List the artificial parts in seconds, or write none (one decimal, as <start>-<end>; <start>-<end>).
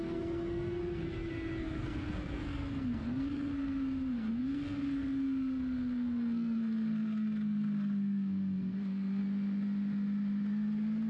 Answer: 0.0-9.2